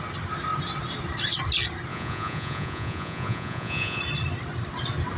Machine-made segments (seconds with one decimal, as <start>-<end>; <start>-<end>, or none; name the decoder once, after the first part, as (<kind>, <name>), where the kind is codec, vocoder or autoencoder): 1.9-4.0 (vocoder, Vocos)